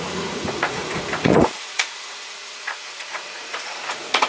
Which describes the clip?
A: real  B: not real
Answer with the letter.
B